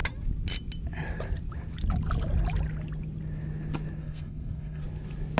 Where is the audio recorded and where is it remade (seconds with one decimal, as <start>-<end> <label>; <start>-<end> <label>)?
0.0-4.0 recorded; 4.0-4.8 remade; 4.8-5.4 recorded